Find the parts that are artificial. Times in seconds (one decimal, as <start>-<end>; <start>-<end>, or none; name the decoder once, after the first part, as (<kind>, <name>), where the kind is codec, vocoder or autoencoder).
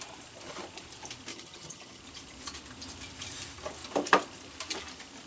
1.3-2.0 (vocoder, HiFi-GAN)